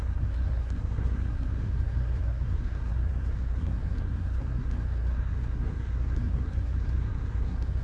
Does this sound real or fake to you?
fake